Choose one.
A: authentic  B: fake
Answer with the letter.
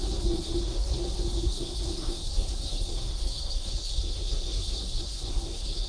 B